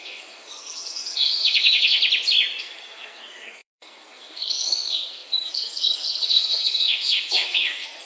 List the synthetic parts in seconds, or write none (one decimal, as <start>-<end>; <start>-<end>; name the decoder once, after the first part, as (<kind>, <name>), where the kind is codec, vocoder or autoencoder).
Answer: 0.0-2.0 (codec, SNAC); 2.6-8.1

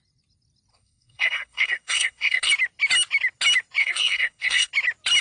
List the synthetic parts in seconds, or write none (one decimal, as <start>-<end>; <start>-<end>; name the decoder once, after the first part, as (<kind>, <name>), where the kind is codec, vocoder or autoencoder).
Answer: 0.7-2.5 (codec, SNAC); 3.8-4.7